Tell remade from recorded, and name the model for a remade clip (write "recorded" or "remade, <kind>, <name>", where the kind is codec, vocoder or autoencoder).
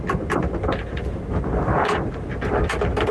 recorded